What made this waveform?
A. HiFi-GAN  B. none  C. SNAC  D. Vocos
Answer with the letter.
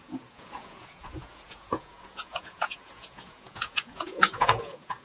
D